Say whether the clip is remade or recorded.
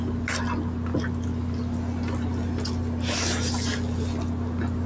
recorded